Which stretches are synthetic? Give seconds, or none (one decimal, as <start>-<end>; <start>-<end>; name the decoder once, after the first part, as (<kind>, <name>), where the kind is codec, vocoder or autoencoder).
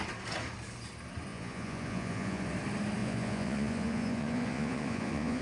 1.3-2.5 (vocoder, Vocos); 3.0-5.4